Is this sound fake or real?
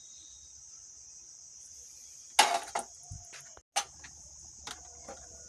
real